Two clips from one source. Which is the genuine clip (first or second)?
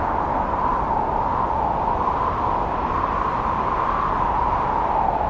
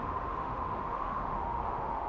first